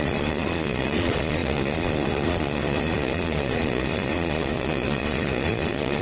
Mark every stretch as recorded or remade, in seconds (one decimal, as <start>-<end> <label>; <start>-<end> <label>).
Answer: 0.0-6.0 remade